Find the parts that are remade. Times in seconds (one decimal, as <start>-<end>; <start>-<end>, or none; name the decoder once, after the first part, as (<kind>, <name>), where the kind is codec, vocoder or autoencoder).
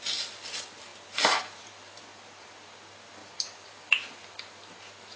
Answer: none